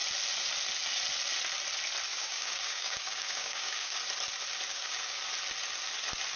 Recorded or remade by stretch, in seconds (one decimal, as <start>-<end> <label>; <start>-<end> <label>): 0.0-2.1 recorded; 2.1-4.0 remade; 4.0-4.7 recorded; 4.7-5.2 remade; 5.2-6.4 recorded